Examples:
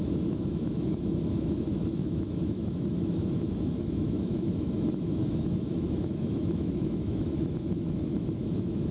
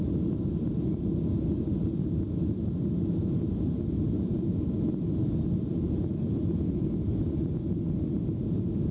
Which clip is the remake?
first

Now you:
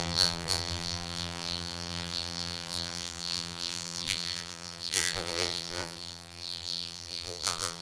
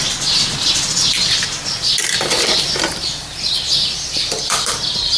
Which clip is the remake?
first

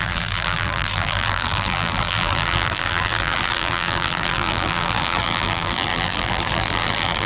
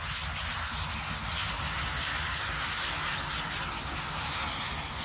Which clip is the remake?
first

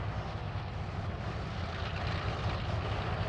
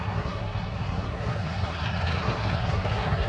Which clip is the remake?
second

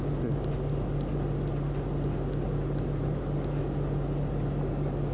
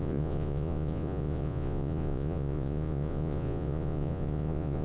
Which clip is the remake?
second